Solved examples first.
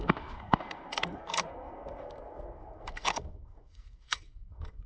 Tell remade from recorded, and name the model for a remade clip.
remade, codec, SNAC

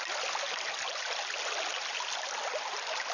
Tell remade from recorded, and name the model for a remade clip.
recorded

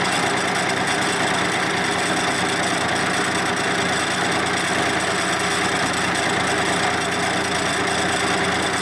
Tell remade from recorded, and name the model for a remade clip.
recorded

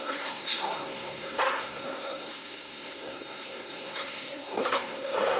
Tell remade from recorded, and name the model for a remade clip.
remade, codec, SNAC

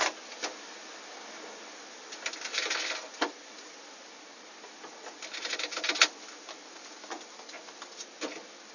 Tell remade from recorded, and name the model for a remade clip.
recorded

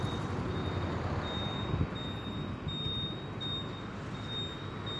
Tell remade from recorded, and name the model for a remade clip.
recorded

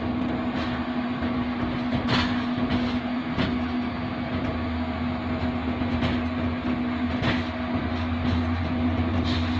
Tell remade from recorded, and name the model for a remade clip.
recorded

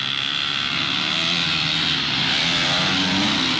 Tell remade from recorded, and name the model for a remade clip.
recorded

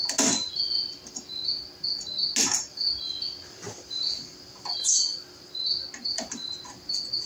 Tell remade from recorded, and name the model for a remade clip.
recorded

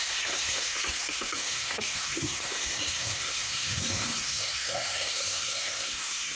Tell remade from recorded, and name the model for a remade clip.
remade, codec, SNAC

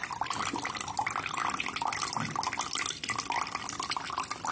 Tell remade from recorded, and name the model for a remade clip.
recorded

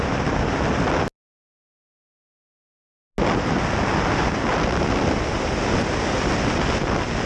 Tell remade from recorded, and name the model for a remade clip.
recorded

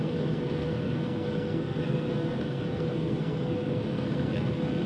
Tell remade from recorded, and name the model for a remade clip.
remade, codec, SNAC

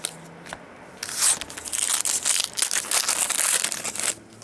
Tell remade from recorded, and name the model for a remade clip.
recorded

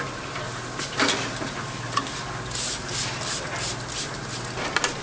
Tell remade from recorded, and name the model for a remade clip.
recorded